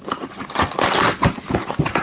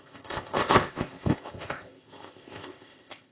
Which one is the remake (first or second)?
second